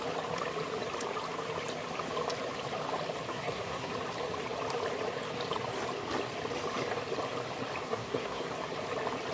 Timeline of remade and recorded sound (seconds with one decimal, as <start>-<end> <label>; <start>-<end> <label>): 0.0-3.3 recorded; 3.3-3.9 remade; 3.9-7.8 recorded; 7.8-8.5 remade; 8.5-9.3 recorded